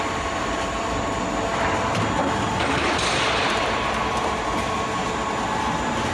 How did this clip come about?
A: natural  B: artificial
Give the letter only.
B